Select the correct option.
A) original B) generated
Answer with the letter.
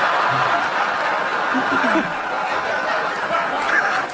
A